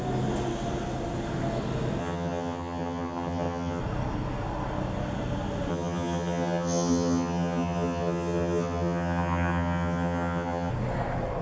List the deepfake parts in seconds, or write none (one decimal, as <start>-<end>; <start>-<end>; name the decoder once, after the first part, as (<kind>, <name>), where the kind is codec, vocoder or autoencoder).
2.0-3.8 (vocoder, HiFi-GAN); 5.7-10.7